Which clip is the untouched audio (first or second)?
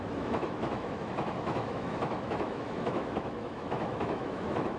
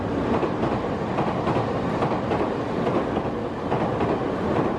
second